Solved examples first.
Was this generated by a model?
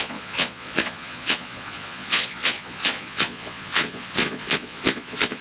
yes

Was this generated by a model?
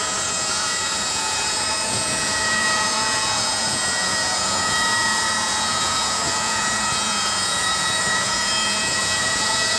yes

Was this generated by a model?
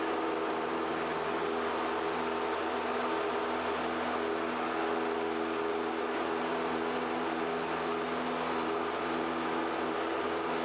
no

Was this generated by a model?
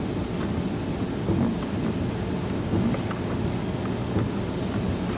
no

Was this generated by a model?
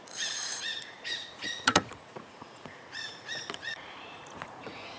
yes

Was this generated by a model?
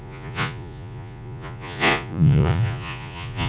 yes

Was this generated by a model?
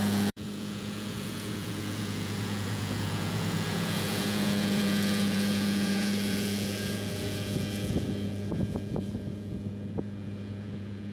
yes